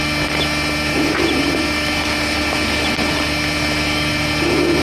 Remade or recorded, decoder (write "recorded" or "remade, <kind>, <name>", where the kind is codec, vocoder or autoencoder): remade, vocoder, BigVGAN v2